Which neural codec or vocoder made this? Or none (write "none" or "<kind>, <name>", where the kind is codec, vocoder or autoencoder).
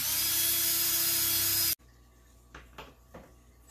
none